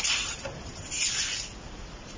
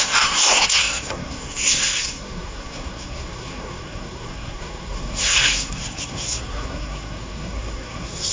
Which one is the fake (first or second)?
second